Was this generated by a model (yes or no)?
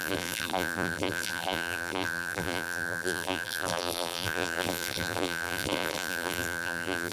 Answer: yes